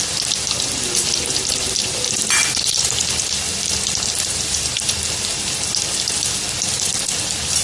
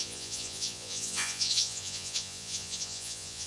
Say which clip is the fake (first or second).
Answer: second